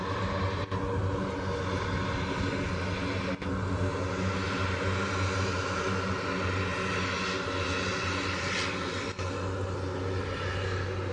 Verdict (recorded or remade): recorded